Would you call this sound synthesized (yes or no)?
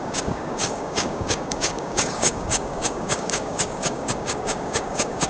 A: yes